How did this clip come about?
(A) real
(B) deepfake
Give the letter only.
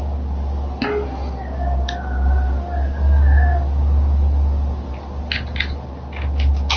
A